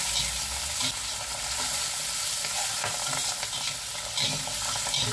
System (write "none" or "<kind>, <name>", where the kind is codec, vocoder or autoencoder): none